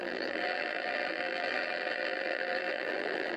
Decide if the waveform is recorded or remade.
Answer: remade